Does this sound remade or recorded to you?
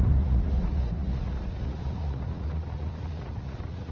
remade